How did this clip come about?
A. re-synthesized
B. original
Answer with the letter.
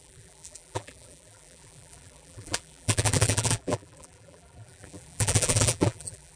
A